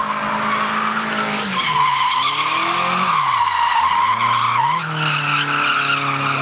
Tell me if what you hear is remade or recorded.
recorded